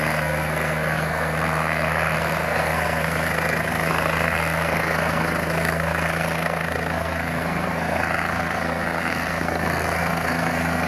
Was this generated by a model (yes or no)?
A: yes